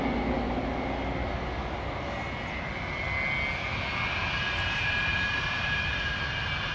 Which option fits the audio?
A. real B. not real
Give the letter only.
A